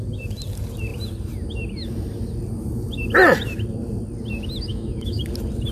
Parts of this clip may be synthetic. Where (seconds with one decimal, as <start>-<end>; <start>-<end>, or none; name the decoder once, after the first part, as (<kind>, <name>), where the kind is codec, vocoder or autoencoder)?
4.7-5.2 (autoencoder, DAC-VAE)